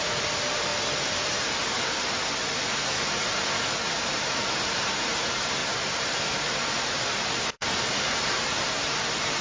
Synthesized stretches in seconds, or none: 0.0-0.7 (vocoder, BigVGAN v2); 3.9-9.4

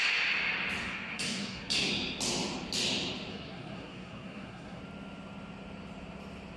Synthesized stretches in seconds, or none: 0.8-1.9 (codec, SNAC); 3.3-4.8

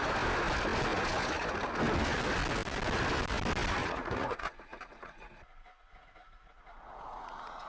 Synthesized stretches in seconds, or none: 3.8-7.7 (vocoder, Vocos)

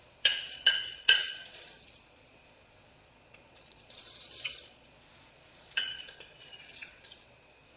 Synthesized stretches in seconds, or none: 0.0-7.8 (vocoder, Vocos)